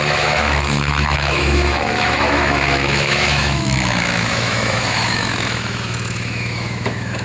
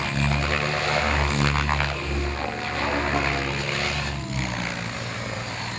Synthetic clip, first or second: first